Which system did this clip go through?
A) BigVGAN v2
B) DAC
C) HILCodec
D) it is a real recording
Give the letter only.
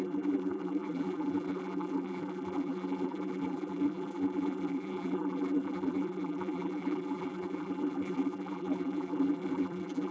A